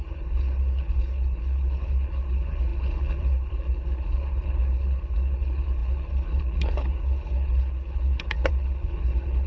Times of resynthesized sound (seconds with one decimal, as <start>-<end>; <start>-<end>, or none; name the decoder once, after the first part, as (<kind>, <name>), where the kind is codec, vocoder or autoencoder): 0.0-9.5 (codec, HILCodec)